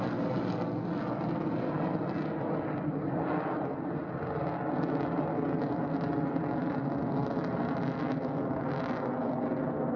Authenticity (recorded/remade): recorded